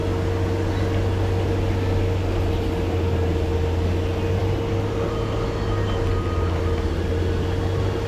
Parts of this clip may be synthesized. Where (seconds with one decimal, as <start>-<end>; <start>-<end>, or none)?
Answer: none

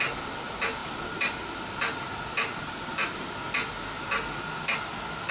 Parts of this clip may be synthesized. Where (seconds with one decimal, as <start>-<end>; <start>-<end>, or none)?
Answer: none